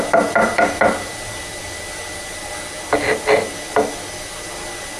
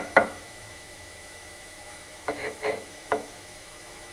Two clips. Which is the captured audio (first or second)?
first